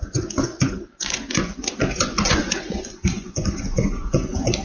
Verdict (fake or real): fake